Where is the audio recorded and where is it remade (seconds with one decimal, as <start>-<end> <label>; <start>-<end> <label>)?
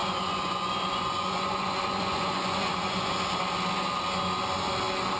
0.0-3.1 remade; 3.1-5.2 recorded